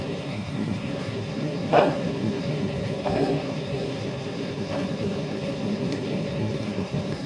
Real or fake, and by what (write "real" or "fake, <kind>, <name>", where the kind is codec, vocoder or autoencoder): fake, codec, SNAC